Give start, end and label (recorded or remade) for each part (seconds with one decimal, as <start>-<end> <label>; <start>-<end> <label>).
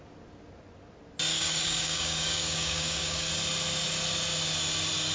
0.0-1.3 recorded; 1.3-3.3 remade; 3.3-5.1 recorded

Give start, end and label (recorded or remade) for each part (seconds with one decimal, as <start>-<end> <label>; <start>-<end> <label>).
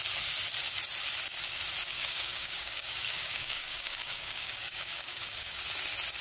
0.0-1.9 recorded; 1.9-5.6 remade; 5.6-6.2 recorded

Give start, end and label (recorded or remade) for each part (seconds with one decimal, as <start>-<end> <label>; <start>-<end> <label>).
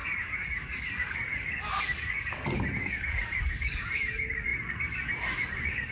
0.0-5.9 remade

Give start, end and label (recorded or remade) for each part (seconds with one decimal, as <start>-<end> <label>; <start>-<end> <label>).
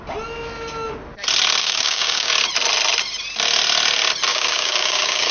0.0-1.6 recorded; 1.6-2.3 remade; 2.3-4.3 recorded; 4.3-5.3 remade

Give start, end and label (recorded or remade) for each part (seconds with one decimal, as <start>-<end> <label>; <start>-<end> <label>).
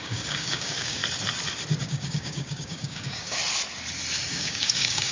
0.0-1.0 remade; 1.0-1.8 recorded; 1.8-3.4 remade; 3.4-4.3 recorded; 4.3-5.1 remade